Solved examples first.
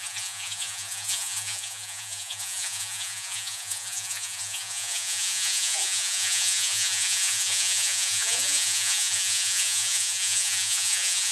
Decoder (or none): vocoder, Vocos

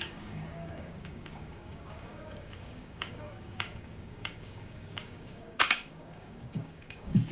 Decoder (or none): codec, DAC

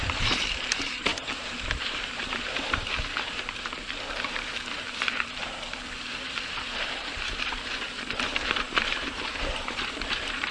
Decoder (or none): vocoder, BigVGAN v2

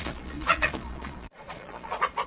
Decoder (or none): vocoder, Vocos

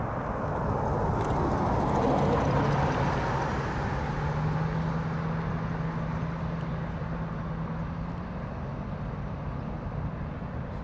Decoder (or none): none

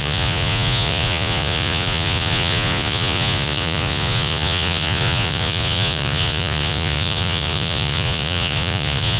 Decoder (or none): vocoder, Vocos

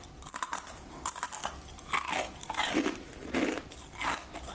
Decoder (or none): none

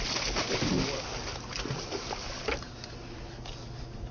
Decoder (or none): none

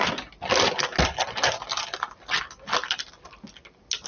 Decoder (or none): none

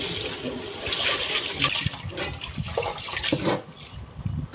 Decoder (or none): none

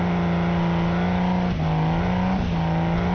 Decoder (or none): none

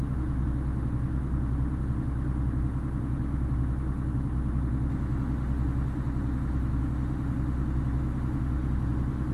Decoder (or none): none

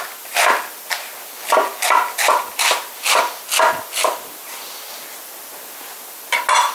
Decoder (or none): none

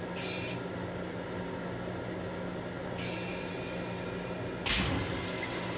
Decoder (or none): none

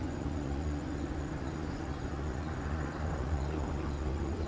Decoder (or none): vocoder, Vocos